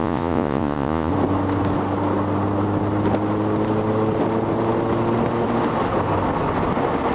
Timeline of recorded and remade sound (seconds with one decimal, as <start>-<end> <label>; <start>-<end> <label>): 0.0-1.1 remade; 1.1-7.1 recorded